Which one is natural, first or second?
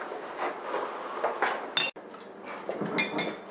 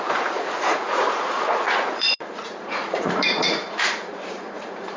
first